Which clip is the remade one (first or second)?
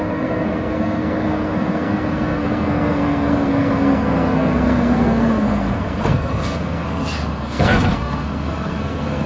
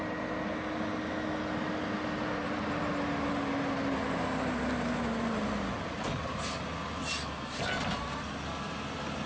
first